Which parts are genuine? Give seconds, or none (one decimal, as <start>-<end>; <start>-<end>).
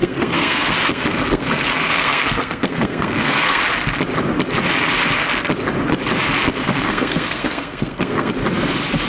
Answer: 3.6-6.6; 8.3-9.1